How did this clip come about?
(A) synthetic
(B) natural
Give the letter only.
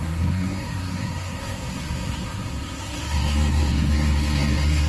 A